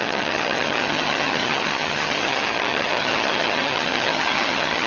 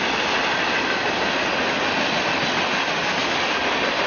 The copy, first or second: first